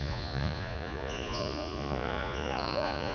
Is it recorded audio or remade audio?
remade